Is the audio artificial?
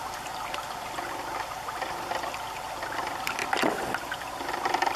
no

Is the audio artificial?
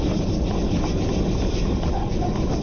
no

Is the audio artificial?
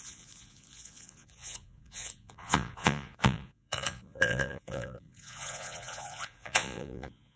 yes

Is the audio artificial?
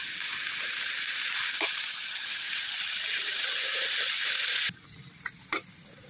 no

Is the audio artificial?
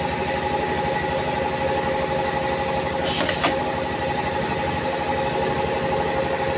no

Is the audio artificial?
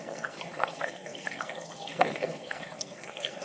yes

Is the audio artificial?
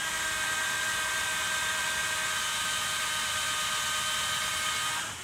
no